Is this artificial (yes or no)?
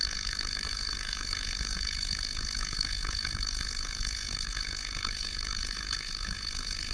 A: yes